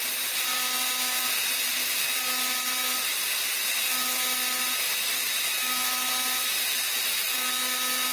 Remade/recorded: recorded